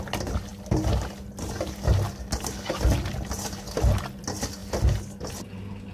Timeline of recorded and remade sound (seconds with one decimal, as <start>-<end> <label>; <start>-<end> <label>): 0.0-5.9 recorded